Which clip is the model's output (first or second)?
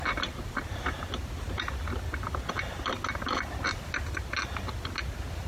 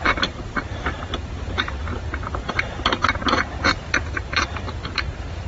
second